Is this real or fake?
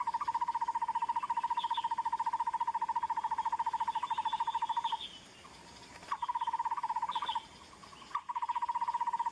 real